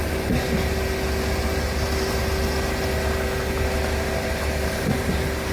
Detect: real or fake real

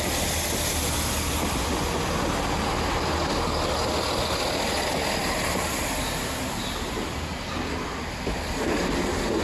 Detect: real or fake real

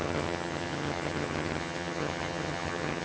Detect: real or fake fake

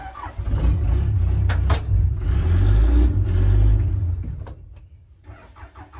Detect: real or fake real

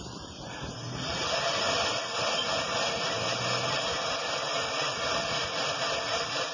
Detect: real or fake real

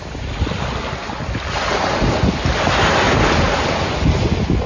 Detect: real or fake real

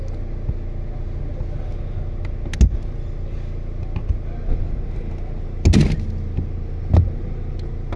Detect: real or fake real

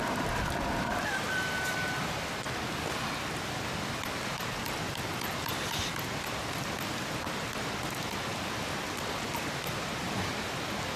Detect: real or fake fake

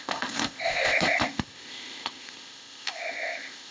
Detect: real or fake fake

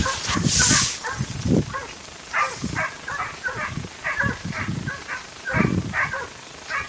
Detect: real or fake real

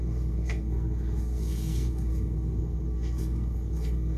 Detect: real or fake fake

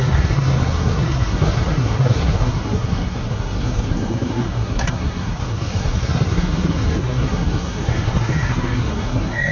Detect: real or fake fake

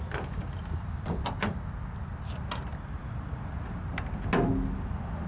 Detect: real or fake real